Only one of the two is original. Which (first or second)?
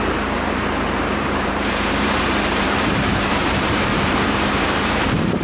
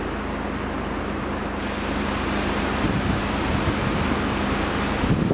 second